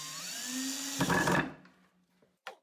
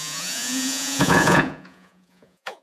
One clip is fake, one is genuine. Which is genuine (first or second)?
first